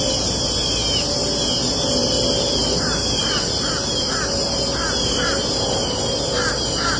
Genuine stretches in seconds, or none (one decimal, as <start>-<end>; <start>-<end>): 0.0-2.0; 2.8-3.2; 3.7-7.0